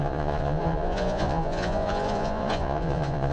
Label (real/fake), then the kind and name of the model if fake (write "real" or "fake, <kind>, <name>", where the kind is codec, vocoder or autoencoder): fake, vocoder, Vocos